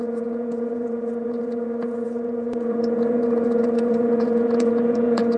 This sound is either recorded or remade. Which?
remade